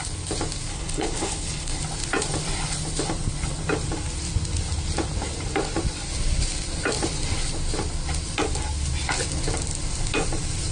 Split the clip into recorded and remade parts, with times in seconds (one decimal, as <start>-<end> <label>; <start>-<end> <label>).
0.0-0.7 recorded; 0.7-1.8 remade; 1.8-10.7 recorded